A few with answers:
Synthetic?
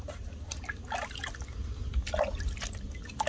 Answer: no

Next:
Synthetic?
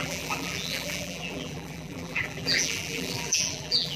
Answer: yes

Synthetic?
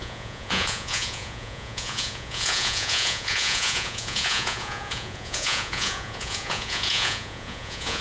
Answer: yes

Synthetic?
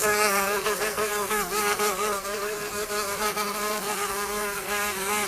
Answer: yes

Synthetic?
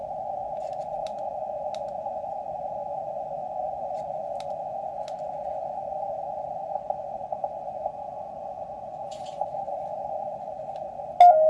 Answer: no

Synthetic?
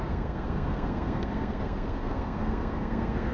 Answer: yes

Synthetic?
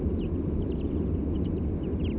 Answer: no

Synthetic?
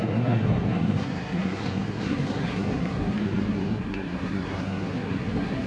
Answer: yes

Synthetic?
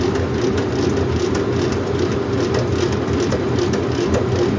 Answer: no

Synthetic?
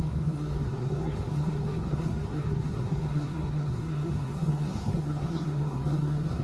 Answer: yes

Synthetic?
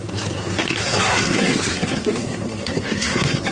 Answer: yes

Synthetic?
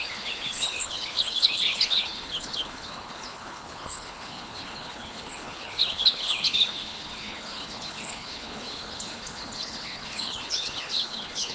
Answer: yes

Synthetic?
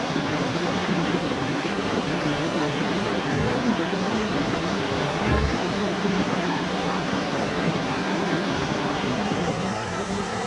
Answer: yes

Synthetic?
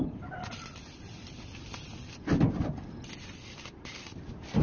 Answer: no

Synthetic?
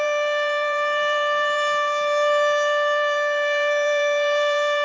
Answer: yes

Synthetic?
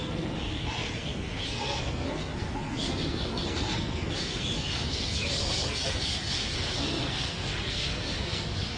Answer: yes